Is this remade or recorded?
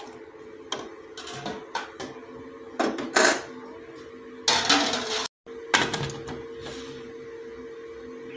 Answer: recorded